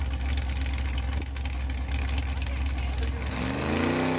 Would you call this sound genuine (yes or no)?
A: yes